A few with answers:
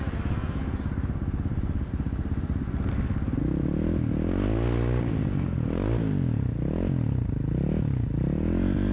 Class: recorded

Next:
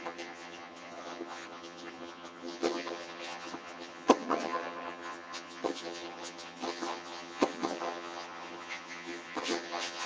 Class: remade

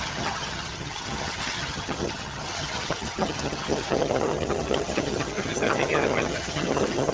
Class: remade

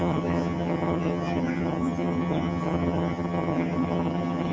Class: remade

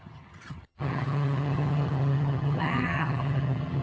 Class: remade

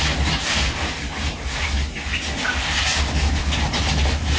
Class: recorded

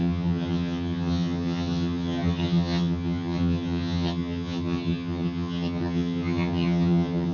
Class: remade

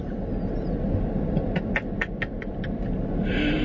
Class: recorded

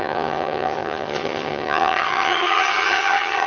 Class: remade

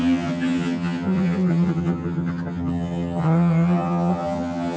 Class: remade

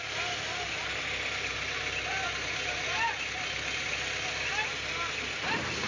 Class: recorded